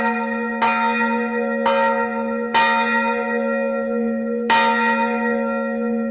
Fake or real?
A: real